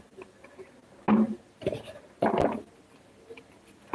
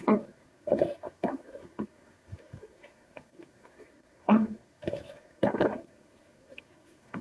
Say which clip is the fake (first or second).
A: second